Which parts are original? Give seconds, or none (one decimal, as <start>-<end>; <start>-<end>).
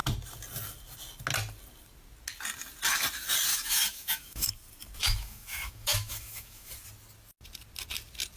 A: 0.0-3.5; 4.5-5.0; 6.7-8.4